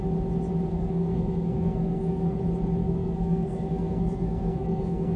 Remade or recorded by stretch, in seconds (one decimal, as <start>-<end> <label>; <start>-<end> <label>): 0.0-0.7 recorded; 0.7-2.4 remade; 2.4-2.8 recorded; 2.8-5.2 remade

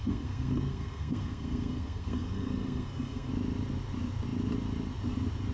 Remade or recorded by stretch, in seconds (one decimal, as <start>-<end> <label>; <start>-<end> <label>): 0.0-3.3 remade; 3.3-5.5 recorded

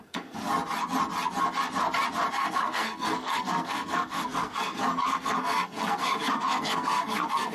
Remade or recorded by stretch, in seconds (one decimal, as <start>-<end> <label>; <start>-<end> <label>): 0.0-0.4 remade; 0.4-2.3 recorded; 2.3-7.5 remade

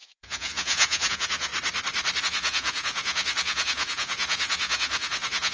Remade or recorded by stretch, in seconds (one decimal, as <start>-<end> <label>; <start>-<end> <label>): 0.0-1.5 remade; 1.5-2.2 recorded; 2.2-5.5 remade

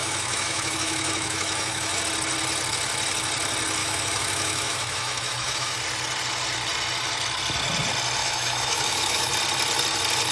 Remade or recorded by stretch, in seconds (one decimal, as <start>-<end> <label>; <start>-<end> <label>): 0.0-2.0 remade; 2.0-3.8 recorded; 3.8-5.8 remade; 5.8-8.2 recorded; 8.2-9.3 remade; 9.3-10.3 recorded

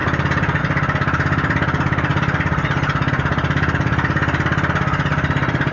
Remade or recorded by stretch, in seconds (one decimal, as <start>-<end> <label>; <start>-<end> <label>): 0.0-5.7 recorded

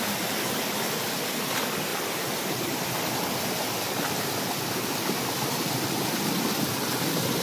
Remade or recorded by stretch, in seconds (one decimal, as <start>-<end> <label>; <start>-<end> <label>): 0.0-7.4 recorded

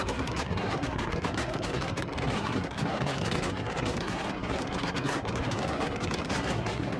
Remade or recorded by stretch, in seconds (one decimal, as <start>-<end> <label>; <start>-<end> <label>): 0.0-7.0 remade